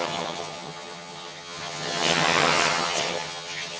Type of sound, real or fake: fake